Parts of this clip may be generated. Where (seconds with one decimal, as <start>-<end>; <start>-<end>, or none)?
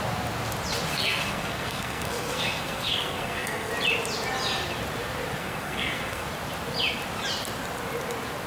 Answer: 0.9-3.7; 5.4-6.3